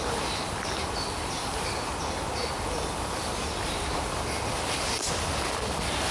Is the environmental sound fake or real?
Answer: real